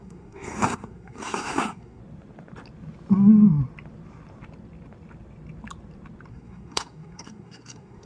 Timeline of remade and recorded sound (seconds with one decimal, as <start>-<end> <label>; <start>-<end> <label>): 0.0-2.0 remade; 2.0-6.3 recorded; 6.3-8.0 remade